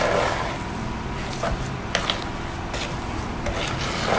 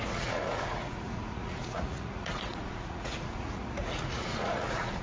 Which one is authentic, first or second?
first